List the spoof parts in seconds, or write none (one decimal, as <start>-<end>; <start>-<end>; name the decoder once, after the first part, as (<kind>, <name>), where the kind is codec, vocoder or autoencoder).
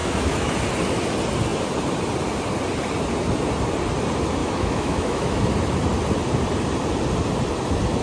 0.0-0.5 (autoencoder, DAC-VAE); 4.4-5.4